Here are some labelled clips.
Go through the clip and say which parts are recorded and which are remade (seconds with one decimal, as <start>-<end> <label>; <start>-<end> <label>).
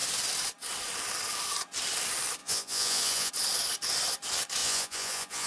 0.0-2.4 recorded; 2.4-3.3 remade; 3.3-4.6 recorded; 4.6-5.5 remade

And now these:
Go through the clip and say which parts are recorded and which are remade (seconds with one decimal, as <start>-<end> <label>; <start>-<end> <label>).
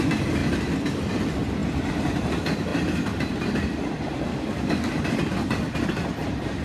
0.0-4.3 recorded; 4.3-4.9 remade; 4.9-6.6 recorded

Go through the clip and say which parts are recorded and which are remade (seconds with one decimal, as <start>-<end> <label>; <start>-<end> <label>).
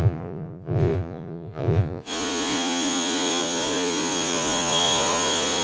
0.0-5.6 remade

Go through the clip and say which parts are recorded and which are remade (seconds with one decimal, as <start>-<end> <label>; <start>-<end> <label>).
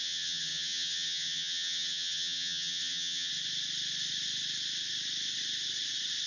0.0-3.3 remade; 3.3-6.3 recorded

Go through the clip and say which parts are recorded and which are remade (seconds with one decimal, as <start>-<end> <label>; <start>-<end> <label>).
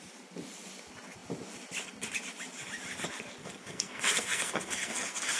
0.0-3.4 recorded; 3.4-5.4 remade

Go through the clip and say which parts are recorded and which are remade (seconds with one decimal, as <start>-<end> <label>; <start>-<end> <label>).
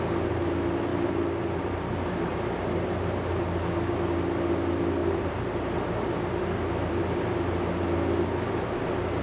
0.0-0.9 recorded; 0.9-3.2 remade; 3.2-5.0 recorded; 5.0-7.0 remade; 7.0-9.2 recorded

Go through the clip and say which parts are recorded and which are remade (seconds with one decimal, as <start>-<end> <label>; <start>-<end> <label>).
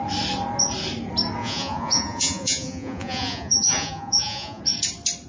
0.0-1.4 recorded; 1.4-4.6 remade; 4.6-5.3 recorded